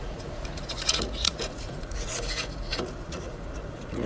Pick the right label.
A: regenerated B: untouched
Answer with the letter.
A